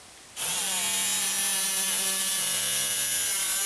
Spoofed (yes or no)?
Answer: no